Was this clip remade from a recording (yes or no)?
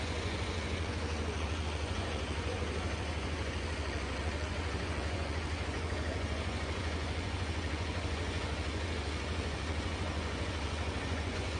yes